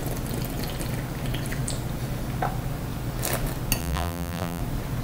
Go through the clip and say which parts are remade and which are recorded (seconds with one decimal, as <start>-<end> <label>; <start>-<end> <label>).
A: 0.0-3.8 recorded; 3.8-4.6 remade; 4.6-5.0 recorded